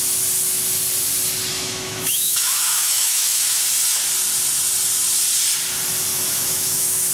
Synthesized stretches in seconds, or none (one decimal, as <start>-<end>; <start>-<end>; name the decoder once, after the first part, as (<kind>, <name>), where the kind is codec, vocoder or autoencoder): 1.5-3.6 (autoencoder, DAC-VAE); 6.1-7.1